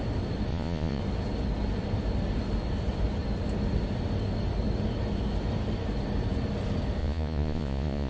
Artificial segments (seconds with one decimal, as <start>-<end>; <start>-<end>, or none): 0.5-1.0; 7.0-8.1